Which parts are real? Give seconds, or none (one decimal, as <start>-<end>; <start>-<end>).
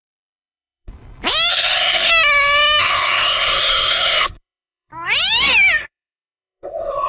0.9-1.5; 2.1-2.8; 4.9-5.8